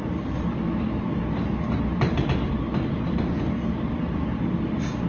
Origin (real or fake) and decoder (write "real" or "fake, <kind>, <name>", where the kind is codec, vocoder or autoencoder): real